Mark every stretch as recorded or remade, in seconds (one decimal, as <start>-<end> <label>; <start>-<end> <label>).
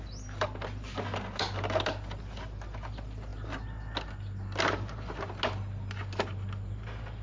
0.0-7.2 recorded